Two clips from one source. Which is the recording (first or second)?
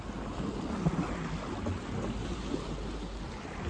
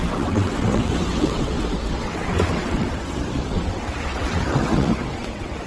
first